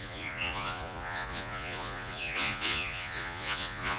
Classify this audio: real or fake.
fake